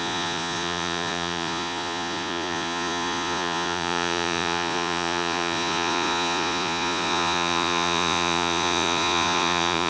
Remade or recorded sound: remade